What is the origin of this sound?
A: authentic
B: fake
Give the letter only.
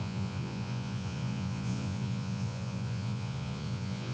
B